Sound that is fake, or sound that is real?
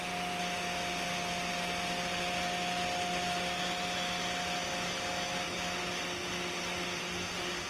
real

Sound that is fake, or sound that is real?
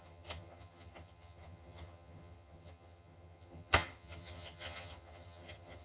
fake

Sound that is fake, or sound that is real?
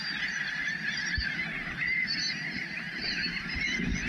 fake